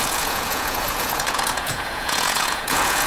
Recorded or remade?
remade